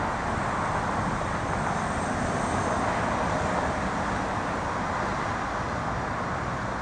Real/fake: real